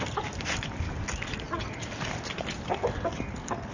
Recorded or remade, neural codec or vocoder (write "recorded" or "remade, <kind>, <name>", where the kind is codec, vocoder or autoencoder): recorded